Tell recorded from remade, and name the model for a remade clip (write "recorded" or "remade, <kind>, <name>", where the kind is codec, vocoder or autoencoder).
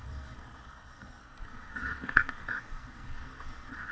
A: remade, codec, SNAC